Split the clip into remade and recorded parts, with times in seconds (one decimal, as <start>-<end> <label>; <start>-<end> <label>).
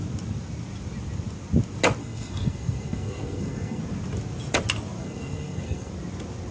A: 0.0-2.0 recorded; 2.0-3.8 remade; 3.8-5.0 recorded; 5.0-5.9 remade; 5.9-6.5 recorded